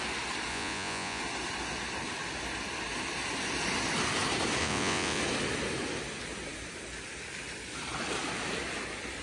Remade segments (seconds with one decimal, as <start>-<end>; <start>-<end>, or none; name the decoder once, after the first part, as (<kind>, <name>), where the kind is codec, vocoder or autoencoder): 0.5-1.2 (vocoder, Vocos); 4.6-5.2